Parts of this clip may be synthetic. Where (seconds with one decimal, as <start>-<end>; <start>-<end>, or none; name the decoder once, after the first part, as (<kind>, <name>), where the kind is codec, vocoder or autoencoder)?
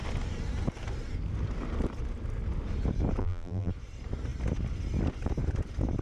3.2-3.7 (vocoder, BigVGAN v2)